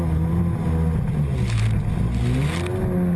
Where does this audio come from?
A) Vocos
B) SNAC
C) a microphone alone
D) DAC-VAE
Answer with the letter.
C